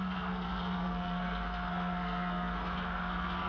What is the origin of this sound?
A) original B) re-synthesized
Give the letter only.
B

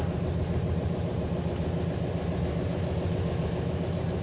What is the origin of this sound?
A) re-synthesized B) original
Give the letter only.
B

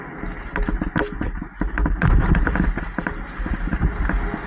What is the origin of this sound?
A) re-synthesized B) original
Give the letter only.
B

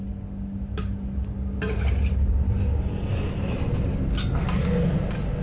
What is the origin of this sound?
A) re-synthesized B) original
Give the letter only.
B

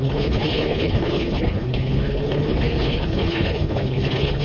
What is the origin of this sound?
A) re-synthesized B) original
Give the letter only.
A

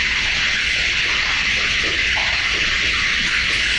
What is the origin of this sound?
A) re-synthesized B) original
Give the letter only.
B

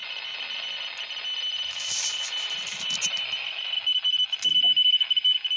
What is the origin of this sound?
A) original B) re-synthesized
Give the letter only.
A